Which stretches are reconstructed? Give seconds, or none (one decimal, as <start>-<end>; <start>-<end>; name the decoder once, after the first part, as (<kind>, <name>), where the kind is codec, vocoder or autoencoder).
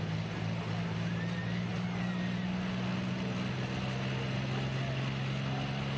none